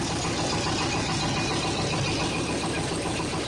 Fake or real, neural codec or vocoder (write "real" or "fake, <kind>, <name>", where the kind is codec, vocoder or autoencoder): real